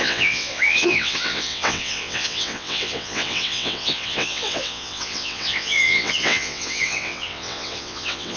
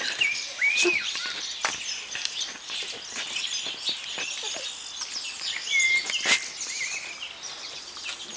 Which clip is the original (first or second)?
second